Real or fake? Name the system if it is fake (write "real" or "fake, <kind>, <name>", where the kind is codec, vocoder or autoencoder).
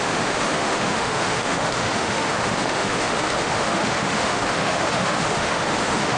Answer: fake, autoencoder, DAC-VAE